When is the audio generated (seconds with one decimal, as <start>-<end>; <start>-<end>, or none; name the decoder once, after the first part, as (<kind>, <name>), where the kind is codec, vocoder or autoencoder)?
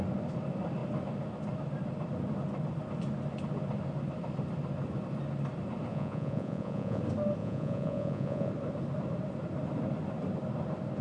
5.9-7.0 (vocoder, Vocos); 7.4-8.5